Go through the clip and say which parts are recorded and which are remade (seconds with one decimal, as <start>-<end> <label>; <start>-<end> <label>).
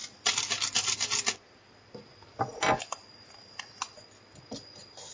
0.0-5.1 recorded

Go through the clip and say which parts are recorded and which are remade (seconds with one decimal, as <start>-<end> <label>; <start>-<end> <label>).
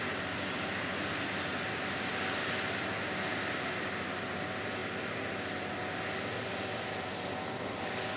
0.0-8.2 recorded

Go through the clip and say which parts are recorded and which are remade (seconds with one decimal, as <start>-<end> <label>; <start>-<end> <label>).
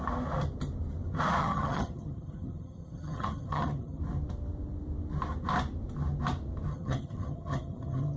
0.0-1.4 recorded; 1.4-4.0 remade; 4.0-6.7 recorded; 6.7-8.2 remade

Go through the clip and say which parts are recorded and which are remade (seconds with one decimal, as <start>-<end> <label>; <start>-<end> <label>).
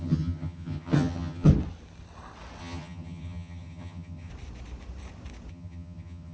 0.0-1.5 remade; 1.5-2.6 recorded; 2.6-4.3 remade; 4.3-5.5 recorded; 5.5-6.3 remade